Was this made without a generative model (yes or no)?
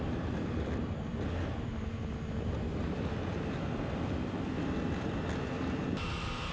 yes